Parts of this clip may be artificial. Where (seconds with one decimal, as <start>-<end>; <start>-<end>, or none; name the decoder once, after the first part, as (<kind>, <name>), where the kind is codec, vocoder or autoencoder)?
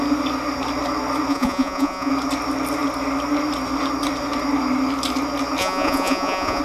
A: 1.3-2.1 (vocoder, Vocos); 5.6-6.6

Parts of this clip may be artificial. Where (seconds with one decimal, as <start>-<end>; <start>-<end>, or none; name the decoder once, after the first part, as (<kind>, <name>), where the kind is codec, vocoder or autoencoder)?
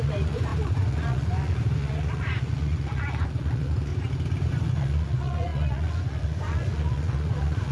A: 0.0-3.9 (vocoder, Vocos); 4.5-7.7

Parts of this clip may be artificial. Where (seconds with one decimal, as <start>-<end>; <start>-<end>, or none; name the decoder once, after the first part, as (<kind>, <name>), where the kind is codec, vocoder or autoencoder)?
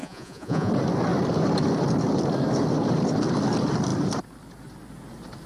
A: 0.0-0.7 (vocoder, Vocos)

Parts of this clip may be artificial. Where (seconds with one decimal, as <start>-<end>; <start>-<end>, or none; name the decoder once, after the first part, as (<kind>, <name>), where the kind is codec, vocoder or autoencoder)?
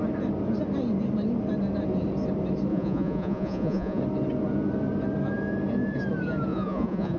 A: 2.7-4.0 (vocoder, Vocos); 6.5-7.2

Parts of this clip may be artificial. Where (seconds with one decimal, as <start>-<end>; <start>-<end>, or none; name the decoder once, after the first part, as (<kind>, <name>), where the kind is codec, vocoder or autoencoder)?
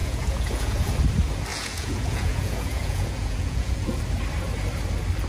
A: 0.0-0.9 (vocoder, Vocos); 1.5-4.0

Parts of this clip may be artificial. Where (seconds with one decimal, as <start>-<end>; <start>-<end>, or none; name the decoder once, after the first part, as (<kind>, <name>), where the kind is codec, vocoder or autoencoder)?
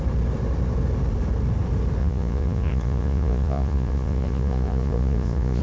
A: 2.0-5.6 (vocoder, Vocos)